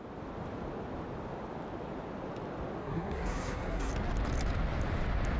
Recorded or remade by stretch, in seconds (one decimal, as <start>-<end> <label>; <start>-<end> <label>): 0.0-2.8 recorded; 2.8-3.9 remade; 3.9-5.4 recorded